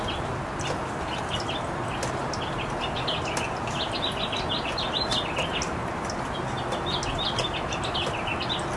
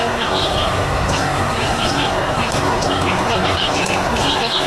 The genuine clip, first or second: first